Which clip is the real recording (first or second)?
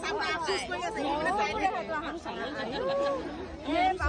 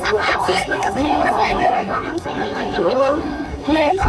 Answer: first